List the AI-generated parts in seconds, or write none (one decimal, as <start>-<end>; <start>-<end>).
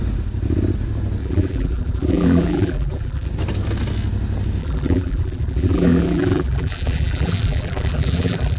1.2-3.3; 4.6-8.6